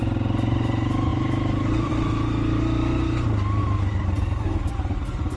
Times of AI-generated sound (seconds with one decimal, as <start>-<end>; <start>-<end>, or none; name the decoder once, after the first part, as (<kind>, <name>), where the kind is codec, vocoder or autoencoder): 1.1-1.9 (vocoder, BigVGAN v2); 3.6-4.7